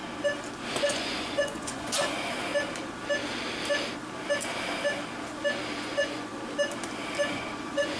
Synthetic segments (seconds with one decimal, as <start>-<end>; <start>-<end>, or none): 0.7-2.5; 5.8-6.3; 7.3-8.0